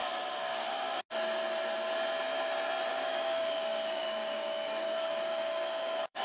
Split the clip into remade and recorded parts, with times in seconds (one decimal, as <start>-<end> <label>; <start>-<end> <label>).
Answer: 0.0-1.0 remade; 1.0-2.9 recorded; 2.9-6.2 remade